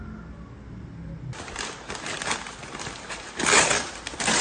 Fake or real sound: real